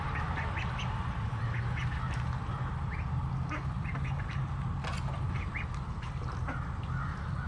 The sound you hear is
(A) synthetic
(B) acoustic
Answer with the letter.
B